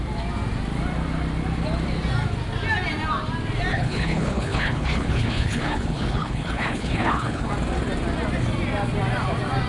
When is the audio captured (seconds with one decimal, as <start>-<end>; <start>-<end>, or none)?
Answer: 0.0-3.7; 7.5-9.7